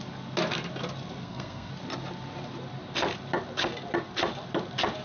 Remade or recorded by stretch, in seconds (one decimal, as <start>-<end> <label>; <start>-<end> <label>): 0.0-1.2 recorded; 1.2-1.7 remade; 1.7-5.0 recorded